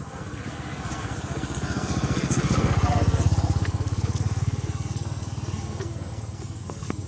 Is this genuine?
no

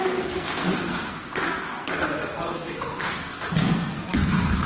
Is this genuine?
no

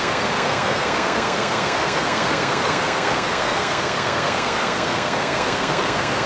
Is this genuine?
no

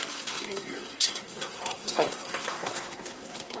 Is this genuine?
no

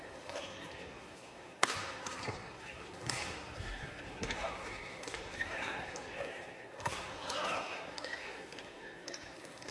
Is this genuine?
no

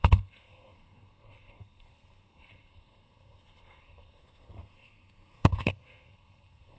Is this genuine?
no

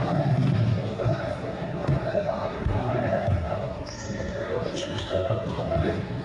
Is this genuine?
no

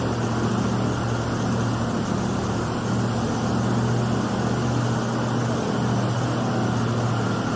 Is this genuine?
yes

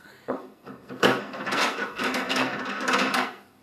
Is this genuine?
no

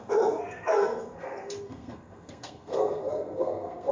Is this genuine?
no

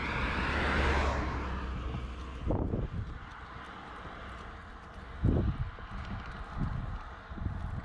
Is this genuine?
yes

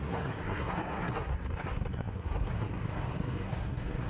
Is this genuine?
no